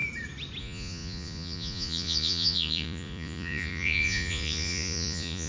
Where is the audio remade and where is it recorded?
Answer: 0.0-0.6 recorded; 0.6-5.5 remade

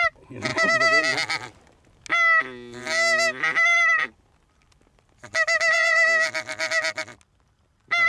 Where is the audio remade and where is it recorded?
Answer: 0.0-8.1 recorded